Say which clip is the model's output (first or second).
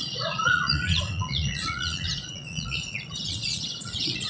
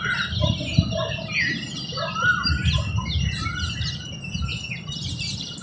first